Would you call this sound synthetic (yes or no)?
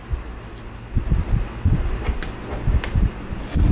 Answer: no